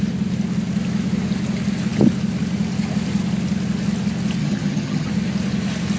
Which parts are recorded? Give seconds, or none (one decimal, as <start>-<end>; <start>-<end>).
0.0-4.4; 5.1-6.0